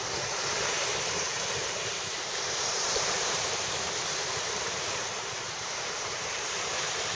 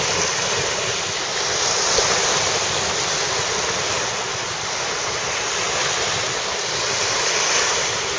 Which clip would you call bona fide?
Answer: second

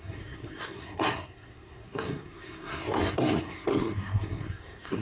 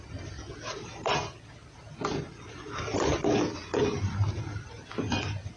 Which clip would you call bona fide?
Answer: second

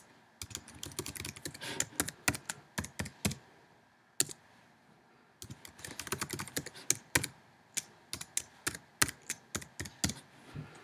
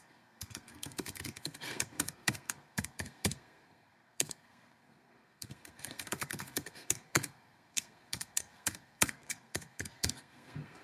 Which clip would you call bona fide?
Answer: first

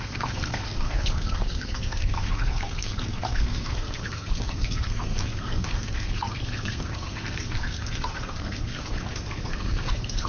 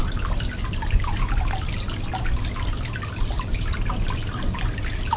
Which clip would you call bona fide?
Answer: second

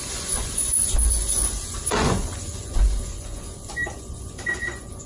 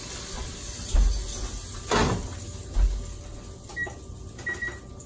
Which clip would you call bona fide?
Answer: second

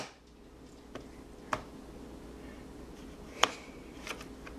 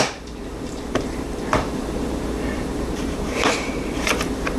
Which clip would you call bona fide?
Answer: first